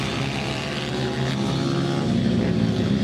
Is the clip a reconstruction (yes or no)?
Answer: no